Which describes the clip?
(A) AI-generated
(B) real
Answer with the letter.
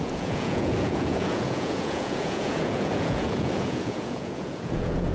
A